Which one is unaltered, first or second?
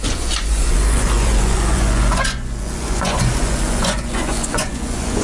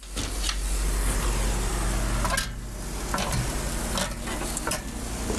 second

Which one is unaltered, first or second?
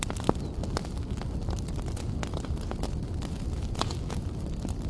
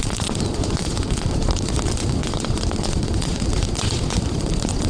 first